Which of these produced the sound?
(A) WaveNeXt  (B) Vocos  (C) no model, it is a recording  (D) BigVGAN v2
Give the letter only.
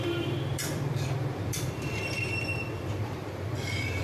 D